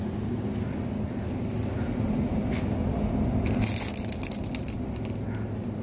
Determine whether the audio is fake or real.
real